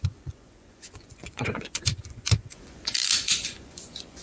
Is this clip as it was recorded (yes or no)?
no